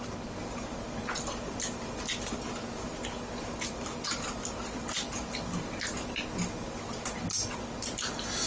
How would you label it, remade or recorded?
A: recorded